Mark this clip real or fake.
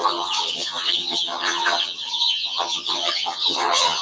fake